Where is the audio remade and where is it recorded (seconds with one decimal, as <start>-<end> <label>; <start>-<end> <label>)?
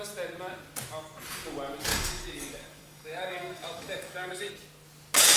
0.0-1.9 recorded; 1.9-4.5 remade; 4.5-5.4 recorded